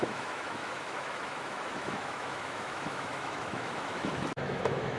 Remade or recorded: remade